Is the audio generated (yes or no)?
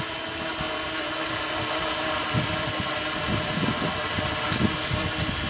no